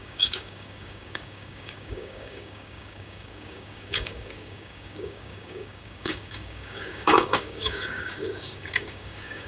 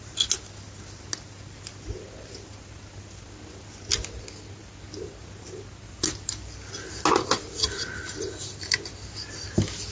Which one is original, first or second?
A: second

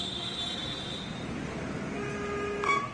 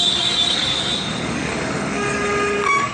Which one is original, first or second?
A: first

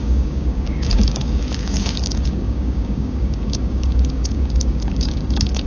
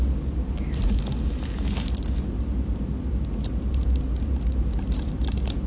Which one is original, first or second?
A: second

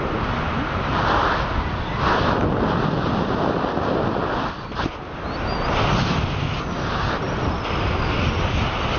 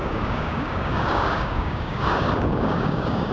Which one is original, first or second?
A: first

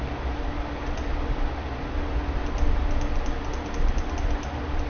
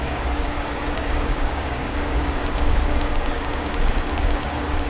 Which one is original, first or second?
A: first